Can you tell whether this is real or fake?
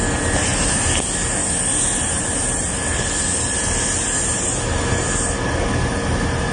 real